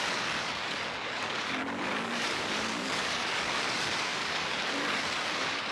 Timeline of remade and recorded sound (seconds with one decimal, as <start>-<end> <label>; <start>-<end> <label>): 0.0-5.7 remade